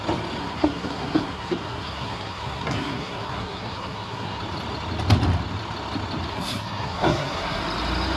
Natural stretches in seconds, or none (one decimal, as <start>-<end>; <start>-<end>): 0.0-0.4; 4.4-6.3; 7.6-8.2